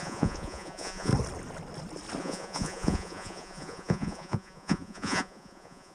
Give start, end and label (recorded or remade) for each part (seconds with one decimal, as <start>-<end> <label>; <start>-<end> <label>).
0.0-1.1 remade; 1.1-2.2 recorded; 2.2-5.9 remade

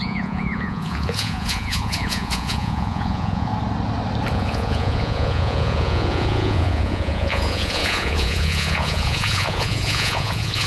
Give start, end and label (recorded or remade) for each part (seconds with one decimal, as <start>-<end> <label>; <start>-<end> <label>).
0.0-3.5 remade; 3.5-4.3 recorded; 4.3-10.7 remade

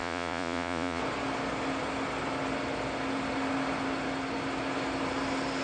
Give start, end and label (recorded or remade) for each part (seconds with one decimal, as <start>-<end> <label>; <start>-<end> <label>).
0.0-1.0 remade; 1.0-5.6 recorded

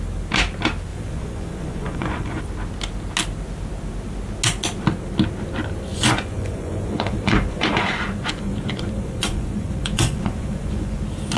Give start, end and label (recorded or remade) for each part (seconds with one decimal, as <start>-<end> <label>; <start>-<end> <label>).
0.0-0.9 recorded; 0.9-2.4 remade; 2.4-5.9 recorded; 5.9-11.0 remade; 11.0-11.4 recorded

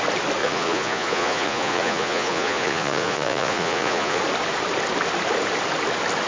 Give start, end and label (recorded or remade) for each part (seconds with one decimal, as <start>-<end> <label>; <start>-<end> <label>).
0.0-0.4 recorded; 0.4-4.2 remade; 4.2-6.3 recorded